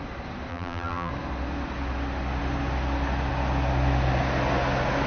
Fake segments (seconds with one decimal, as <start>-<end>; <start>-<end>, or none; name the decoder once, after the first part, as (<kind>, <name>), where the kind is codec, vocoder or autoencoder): 0.5-1.1 (vocoder, BigVGAN v2)